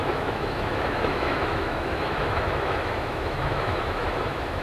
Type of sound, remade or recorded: remade